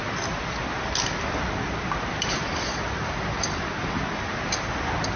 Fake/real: real